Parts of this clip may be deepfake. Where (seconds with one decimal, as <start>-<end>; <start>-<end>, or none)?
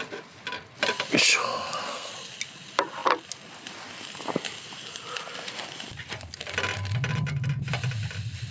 1.4-2.1